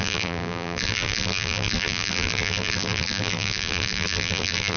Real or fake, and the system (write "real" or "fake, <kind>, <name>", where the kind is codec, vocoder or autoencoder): fake, vocoder, BigVGAN v2